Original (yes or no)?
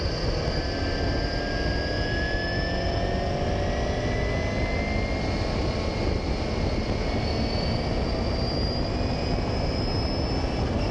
yes